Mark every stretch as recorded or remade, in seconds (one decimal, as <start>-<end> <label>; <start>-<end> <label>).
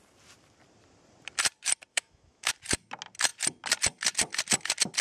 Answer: 0.0-1.9 recorded; 1.9-2.5 remade; 2.5-5.0 recorded